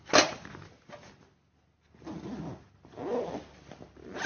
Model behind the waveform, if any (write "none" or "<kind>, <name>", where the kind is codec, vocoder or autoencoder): none